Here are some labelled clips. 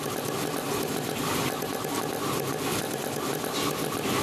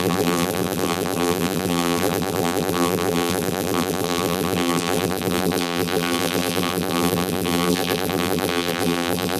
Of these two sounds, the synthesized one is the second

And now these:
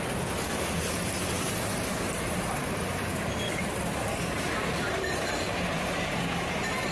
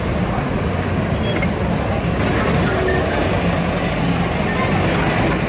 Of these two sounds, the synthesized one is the first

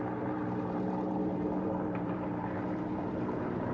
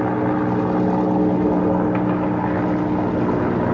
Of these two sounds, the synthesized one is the first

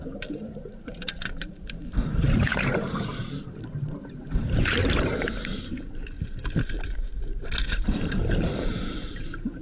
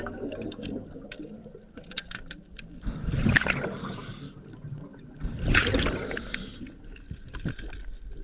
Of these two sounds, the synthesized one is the first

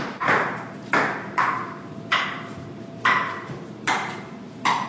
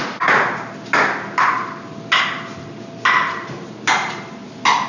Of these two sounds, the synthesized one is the first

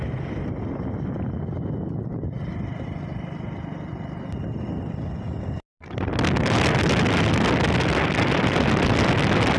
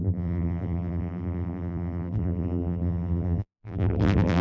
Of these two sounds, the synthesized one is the second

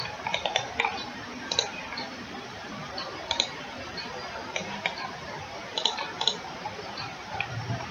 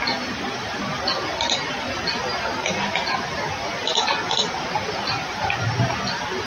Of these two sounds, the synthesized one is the first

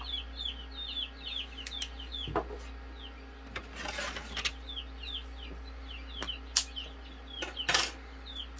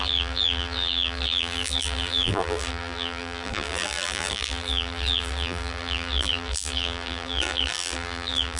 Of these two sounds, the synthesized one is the second